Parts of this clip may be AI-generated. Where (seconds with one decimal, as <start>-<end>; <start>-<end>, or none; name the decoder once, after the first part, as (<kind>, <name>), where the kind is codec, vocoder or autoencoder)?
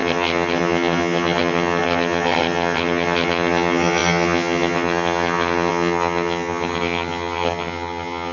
0.0-8.3 (vocoder, HiFi-GAN)